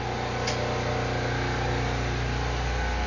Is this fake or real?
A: real